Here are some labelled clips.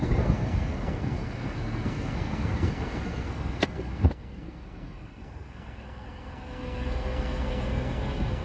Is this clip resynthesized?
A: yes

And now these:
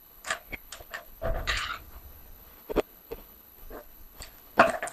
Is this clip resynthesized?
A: yes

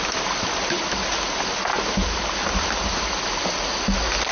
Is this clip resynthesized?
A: no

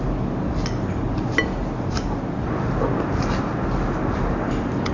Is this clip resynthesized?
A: no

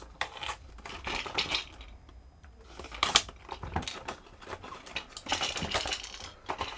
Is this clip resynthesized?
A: no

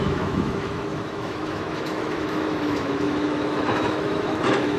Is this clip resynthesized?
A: yes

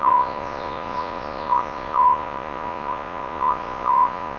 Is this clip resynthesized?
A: yes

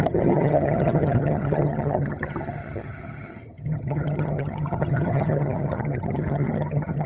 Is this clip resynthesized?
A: yes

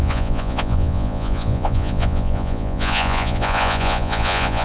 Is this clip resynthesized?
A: yes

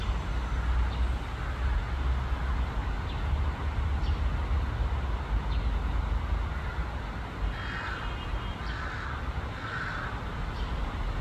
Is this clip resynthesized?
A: no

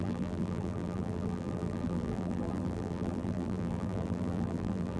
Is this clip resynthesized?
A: yes